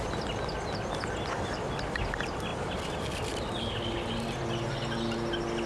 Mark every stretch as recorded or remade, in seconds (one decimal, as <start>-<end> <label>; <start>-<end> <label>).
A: 0.0-5.7 recorded